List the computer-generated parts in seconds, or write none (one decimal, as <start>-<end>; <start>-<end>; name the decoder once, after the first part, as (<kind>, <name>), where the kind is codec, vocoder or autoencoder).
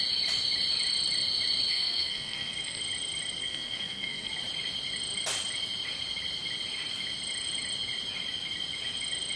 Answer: 1.7-2.8 (codec, SNAC); 3.4-4.3